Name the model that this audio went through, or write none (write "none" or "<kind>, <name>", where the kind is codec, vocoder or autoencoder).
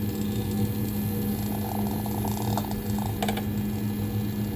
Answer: none